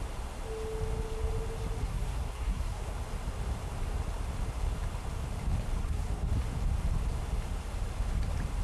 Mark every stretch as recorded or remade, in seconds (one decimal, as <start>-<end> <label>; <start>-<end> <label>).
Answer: 0.0-1.8 recorded; 1.8-2.9 remade; 2.9-5.8 recorded; 5.8-6.3 remade; 6.3-8.6 recorded